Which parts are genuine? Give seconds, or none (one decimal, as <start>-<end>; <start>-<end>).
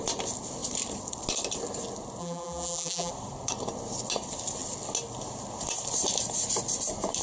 0.0-2.2; 3.1-7.2